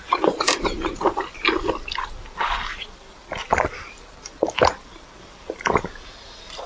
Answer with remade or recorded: remade